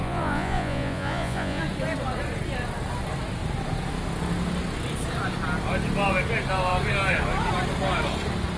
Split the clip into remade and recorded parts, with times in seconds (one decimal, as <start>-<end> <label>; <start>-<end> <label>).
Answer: 0.0-1.6 remade; 1.6-8.6 recorded